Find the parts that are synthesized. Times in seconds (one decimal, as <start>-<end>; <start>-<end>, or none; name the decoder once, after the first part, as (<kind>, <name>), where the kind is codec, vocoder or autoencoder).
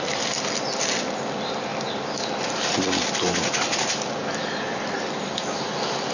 1.7-5.4 (vocoder, BigVGAN v2)